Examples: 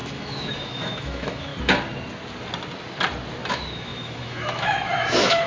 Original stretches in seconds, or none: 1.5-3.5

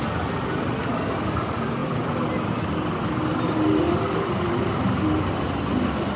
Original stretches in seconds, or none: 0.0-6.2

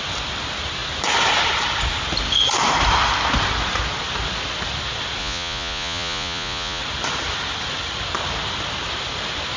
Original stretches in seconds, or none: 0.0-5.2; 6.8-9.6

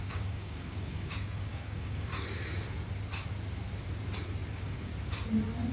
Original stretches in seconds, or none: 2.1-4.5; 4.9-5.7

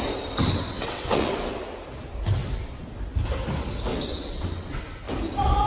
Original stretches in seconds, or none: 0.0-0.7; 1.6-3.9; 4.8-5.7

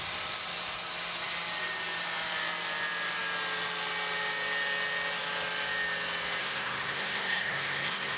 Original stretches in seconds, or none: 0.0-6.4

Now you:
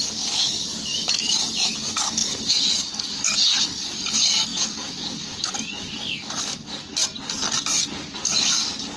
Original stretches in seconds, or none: 7.0-8.1